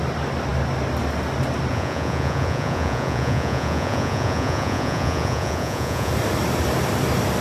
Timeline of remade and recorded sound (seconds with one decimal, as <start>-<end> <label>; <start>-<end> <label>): 0.0-1.7 recorded; 1.7-6.1 remade; 6.1-7.4 recorded